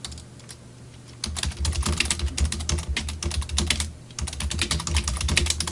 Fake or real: real